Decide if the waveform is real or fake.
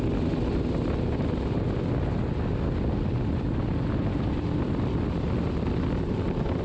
real